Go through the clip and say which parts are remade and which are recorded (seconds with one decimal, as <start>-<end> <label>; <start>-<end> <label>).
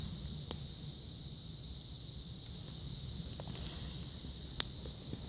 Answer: 0.0-5.3 recorded